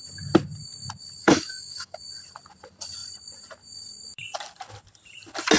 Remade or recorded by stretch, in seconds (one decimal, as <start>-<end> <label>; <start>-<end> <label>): 0.0-1.2 recorded; 1.2-2.0 remade; 2.0-5.6 recorded